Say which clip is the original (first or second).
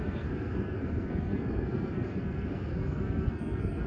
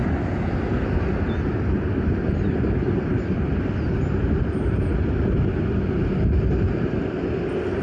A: second